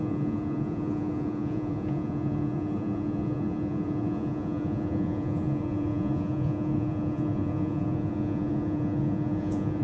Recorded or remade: remade